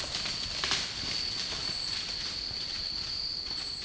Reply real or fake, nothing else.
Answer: real